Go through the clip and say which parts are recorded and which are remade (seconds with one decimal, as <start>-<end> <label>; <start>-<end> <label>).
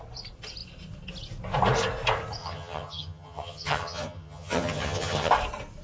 0.0-2.4 recorded; 2.4-5.3 remade; 5.3-5.8 recorded